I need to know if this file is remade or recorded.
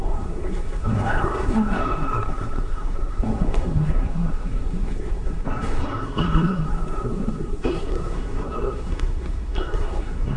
remade